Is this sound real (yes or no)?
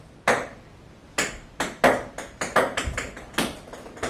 yes